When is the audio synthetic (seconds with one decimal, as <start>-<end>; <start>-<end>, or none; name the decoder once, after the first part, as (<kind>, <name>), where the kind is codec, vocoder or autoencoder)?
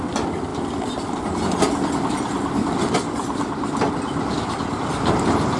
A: none